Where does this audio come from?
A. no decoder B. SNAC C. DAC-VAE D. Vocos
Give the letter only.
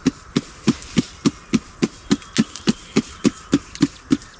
A